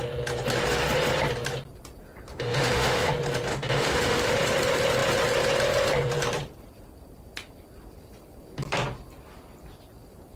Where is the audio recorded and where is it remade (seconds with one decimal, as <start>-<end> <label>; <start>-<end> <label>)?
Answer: 0.0-2.3 recorded; 2.3-3.1 remade; 3.1-3.5 recorded; 3.5-4.3 remade; 4.3-10.4 recorded